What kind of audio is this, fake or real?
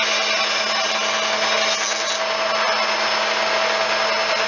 real